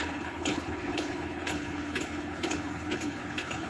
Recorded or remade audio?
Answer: remade